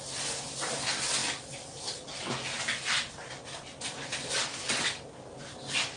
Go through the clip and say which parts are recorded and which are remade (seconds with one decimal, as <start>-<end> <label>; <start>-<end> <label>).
0.0-6.0 recorded